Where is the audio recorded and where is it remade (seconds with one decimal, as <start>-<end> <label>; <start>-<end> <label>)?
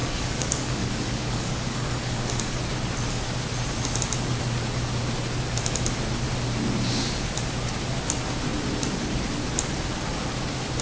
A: 0.0-2.6 remade; 2.6-10.8 recorded